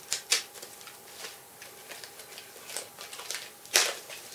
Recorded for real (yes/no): yes